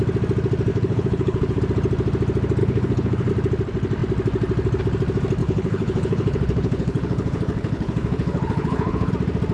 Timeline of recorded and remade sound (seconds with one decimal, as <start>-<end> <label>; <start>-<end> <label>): 0.0-0.7 recorded; 0.7-1.6 remade; 1.6-2.6 recorded; 2.6-3.3 remade; 3.3-5.4 recorded; 5.4-9.1 remade; 9.1-9.5 recorded